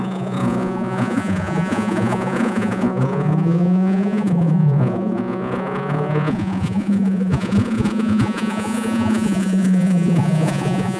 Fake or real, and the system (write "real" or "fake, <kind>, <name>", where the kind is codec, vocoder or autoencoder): fake, vocoder, Vocos